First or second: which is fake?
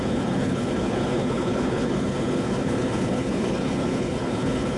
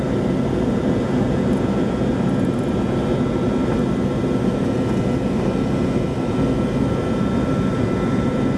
first